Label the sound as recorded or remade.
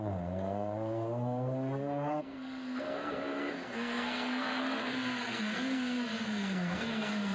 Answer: remade